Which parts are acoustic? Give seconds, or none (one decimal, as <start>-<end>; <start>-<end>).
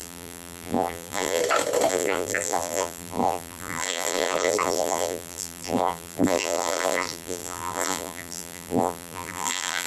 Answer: 1.4-1.9